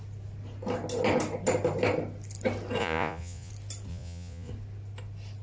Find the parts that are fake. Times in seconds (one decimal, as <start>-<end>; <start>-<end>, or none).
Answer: 2.8-3.5; 3.9-4.5